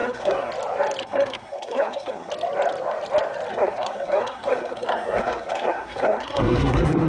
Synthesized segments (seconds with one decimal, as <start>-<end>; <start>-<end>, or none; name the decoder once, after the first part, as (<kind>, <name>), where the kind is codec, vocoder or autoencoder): 0.0-0.5 (codec, SNAC); 1.0-2.3; 3.5-7.1